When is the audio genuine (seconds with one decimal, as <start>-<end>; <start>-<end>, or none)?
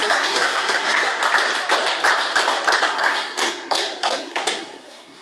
1.2-2.8